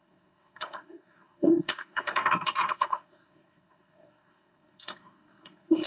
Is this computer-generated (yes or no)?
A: yes